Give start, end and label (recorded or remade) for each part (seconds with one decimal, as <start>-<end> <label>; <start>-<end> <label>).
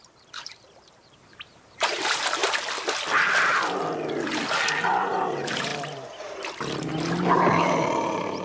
0.0-2.4 remade; 2.4-5.0 recorded; 5.0-5.7 remade; 5.7-7.6 recorded; 7.6-8.4 remade